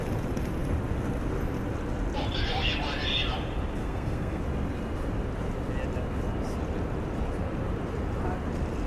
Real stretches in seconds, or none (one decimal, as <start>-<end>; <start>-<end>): 0.0-3.8; 4.4-8.9